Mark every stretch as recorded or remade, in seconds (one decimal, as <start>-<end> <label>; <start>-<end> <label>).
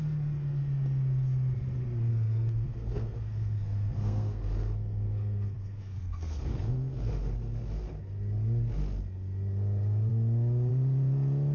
0.0-2.1 recorded; 2.1-7.1 remade; 7.1-11.5 recorded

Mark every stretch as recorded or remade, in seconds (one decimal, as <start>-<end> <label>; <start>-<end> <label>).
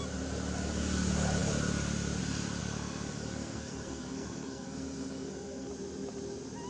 0.0-2.6 recorded; 2.6-5.7 remade; 5.7-6.7 recorded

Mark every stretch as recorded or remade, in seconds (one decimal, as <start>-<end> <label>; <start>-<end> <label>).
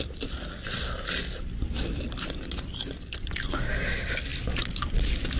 0.0-5.4 recorded